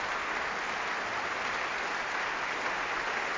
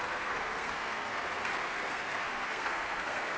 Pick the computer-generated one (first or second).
second